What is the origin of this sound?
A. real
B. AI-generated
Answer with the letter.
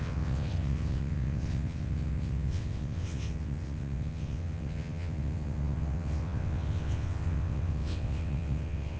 B